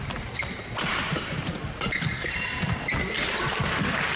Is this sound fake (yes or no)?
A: no